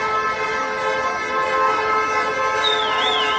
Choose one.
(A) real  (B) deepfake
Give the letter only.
A